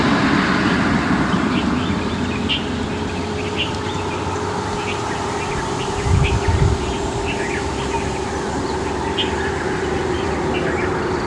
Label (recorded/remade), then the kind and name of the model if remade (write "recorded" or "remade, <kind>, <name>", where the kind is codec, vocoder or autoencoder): recorded